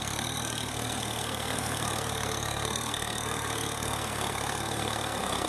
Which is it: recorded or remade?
remade